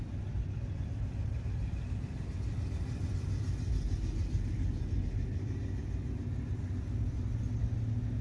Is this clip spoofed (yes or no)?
no